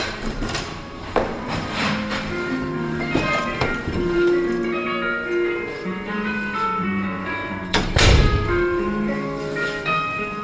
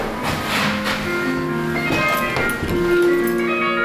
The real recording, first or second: second